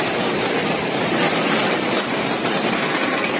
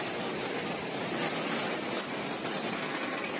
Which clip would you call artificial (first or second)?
first